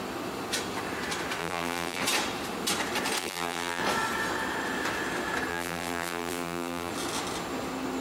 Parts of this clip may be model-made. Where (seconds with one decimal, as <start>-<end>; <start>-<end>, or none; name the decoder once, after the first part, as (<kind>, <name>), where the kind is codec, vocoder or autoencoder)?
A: 1.4-2.0 (vocoder, BigVGAN v2); 3.2-3.8; 5.5-6.9